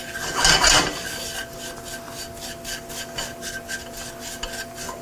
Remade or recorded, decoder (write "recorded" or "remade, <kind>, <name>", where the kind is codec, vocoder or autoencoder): recorded